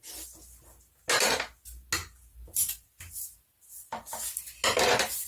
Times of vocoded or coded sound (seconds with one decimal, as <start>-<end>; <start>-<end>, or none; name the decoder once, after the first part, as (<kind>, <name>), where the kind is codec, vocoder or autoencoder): none